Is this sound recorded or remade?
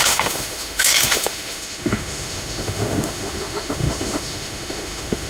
remade